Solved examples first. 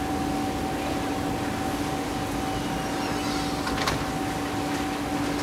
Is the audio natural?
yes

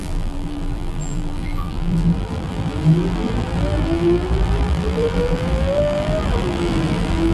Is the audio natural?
no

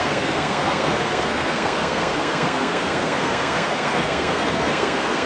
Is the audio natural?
no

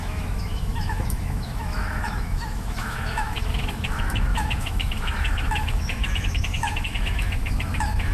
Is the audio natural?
no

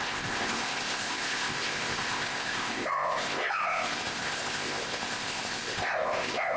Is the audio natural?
no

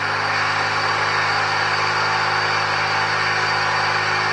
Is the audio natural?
yes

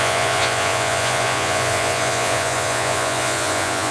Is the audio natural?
no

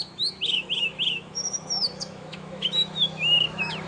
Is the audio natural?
no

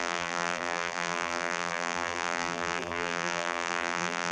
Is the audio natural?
no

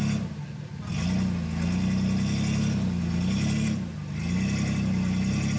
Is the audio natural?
yes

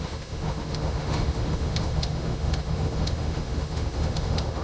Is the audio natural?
no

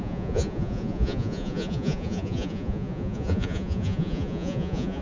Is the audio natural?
no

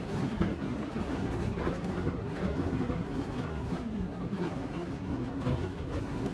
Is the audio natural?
no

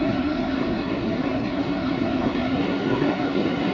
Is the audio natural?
no